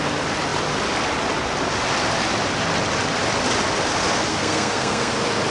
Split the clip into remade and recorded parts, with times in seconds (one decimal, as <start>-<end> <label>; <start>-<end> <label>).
0.0-4.3 recorded; 4.3-5.1 remade; 5.1-5.5 recorded